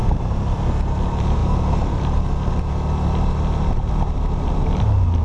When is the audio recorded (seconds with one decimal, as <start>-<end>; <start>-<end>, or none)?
0.6-5.2